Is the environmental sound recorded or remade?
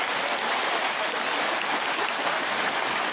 recorded